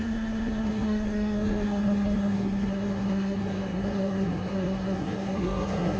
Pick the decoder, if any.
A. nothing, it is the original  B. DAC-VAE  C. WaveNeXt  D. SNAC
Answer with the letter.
D